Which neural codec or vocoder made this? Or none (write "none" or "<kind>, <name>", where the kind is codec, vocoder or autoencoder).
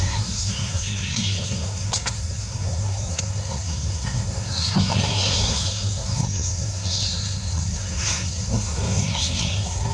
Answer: codec, SNAC